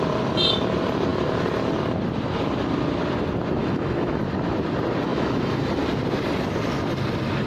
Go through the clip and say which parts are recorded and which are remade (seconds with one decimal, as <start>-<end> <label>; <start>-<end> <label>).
0.0-3.6 recorded; 3.6-4.2 remade; 4.2-5.1 recorded; 5.1-5.7 remade; 5.7-7.5 recorded